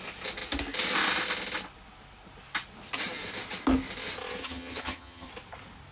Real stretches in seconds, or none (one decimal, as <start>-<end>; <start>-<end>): 0.0-4.4; 5.3-5.9